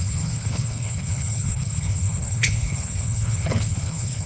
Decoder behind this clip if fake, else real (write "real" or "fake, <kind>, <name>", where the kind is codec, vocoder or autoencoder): fake, codec, HILCodec